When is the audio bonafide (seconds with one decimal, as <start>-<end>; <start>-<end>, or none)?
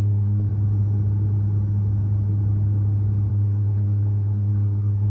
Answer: 0.5-3.3